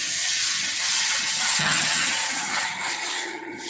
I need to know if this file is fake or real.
fake